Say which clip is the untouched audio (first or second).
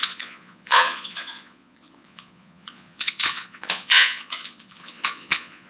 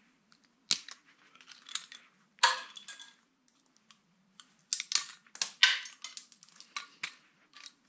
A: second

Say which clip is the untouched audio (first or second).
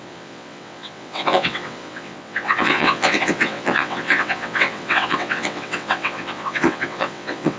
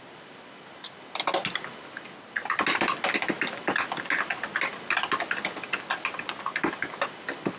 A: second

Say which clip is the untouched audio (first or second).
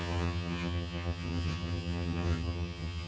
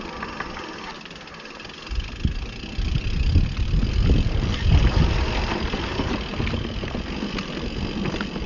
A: second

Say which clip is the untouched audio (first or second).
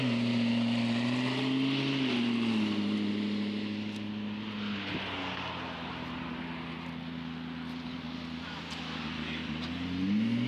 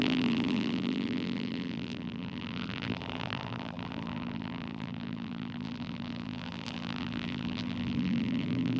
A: first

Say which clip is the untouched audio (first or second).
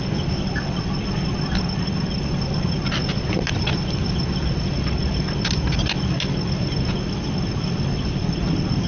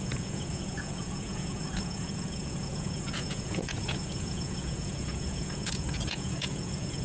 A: first